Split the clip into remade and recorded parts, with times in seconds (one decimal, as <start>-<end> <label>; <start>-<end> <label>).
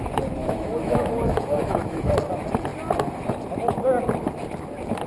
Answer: 0.0-0.4 recorded; 0.4-2.1 remade; 2.1-5.1 recorded